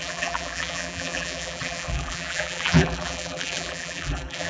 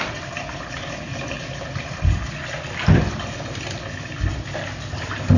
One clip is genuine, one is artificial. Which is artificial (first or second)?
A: first